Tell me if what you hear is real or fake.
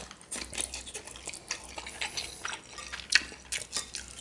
real